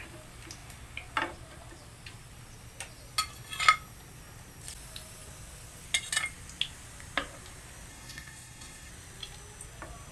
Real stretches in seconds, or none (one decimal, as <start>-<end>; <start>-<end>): 0.0-7.9; 8.9-10.1